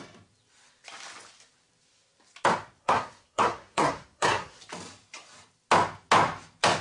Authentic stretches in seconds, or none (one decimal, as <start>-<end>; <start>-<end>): 0.0-2.8; 4.6-6.8